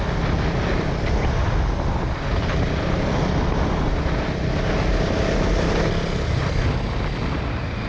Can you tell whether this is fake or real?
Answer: real